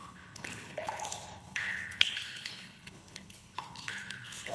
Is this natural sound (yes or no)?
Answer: no